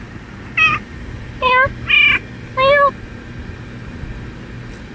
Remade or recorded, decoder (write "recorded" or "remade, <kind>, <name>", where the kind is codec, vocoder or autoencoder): recorded